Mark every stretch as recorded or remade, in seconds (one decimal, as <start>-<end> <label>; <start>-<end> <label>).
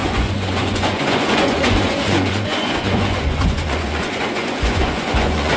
0.0-5.6 remade